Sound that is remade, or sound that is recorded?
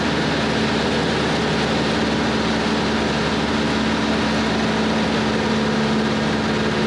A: recorded